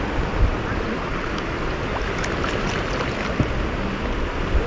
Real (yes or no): yes